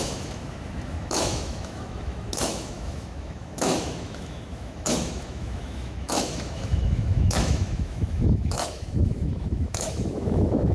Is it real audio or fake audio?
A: fake